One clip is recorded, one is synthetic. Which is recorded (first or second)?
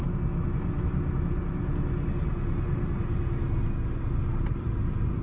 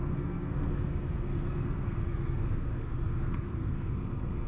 first